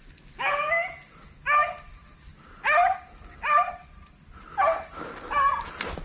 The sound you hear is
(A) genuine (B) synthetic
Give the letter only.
A